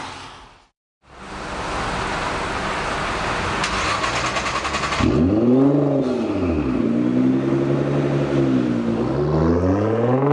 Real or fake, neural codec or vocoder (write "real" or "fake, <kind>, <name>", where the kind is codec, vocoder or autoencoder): real